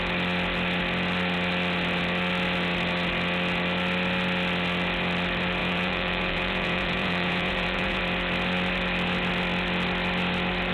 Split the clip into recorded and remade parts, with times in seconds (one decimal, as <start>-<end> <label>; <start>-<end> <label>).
0.0-5.6 recorded; 5.6-8.0 remade; 8.0-10.7 recorded